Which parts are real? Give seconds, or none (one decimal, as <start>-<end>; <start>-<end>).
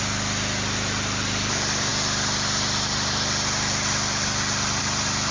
0.0-5.3